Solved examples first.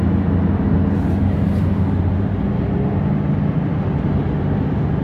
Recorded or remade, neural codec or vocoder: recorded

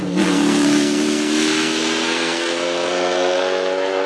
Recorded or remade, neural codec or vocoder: remade, codec, SNAC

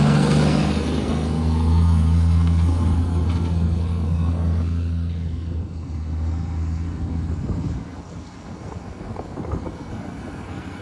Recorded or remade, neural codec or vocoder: remade, codec, SNAC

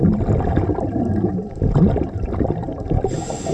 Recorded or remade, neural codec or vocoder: recorded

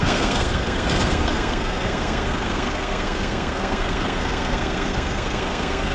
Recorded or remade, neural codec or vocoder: remade, codec, SNAC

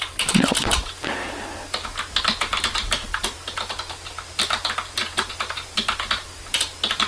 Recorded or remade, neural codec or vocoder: recorded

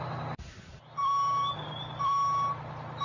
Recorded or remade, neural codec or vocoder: recorded